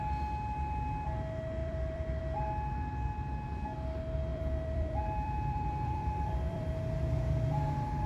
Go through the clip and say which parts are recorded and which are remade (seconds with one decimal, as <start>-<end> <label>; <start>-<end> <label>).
0.0-1.6 recorded; 1.6-2.2 remade; 2.2-4.3 recorded; 4.3-6.7 remade; 6.7-8.1 recorded